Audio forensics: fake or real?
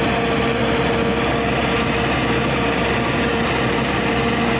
real